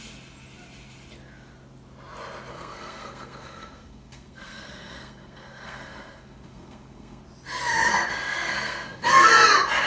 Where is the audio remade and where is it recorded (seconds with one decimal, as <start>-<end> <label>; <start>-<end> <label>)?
0.0-2.5 recorded; 2.5-7.2 remade; 7.2-7.9 recorded; 7.9-9.3 remade; 9.3-9.9 recorded